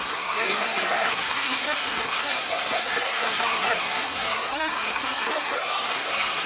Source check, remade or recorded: remade